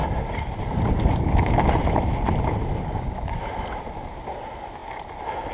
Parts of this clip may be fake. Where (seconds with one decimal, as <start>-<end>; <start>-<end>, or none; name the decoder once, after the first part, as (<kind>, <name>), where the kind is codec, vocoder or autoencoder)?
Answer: 2.7-3.4 (codec, DAC)